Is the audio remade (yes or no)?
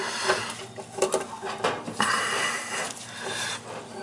no